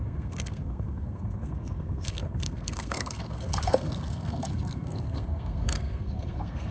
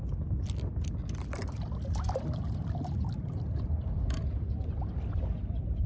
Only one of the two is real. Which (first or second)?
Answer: second